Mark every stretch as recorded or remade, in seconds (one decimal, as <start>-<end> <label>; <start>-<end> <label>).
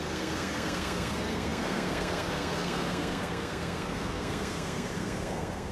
0.0-5.7 remade